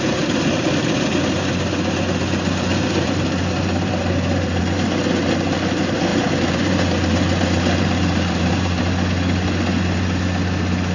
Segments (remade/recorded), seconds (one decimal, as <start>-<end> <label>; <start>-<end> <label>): 0.0-2.7 recorded; 2.7-4.6 remade; 4.6-6.1 recorded; 6.1-8.8 remade; 8.8-10.9 recorded